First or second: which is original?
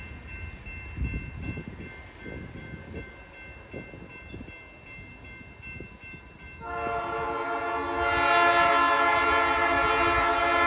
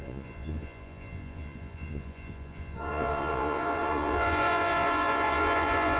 first